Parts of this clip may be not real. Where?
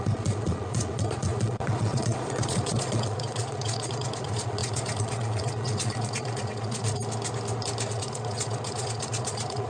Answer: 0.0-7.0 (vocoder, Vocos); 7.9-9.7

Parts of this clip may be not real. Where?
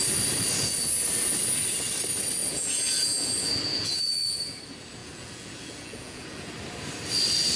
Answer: 2.4-4.6 (vocoder, Vocos); 5.0-6.5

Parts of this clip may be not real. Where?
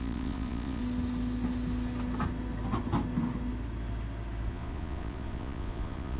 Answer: 0.0-0.8 (vocoder, Vocos); 4.5-6.2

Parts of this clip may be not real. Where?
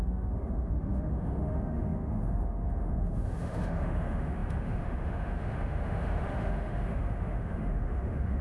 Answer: 0.0-8.4 (autoencoder, DAC-VAE)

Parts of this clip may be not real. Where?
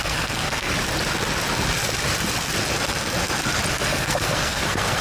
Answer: 0.0-0.7 (codec, SNAC); 3.7-5.0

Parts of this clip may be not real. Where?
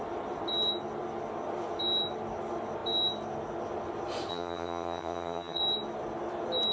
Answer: 4.3-5.6 (vocoder, HiFi-GAN)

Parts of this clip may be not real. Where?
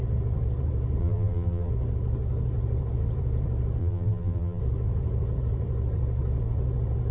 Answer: 1.0-1.7 (vocoder, BigVGAN v2); 3.8-4.6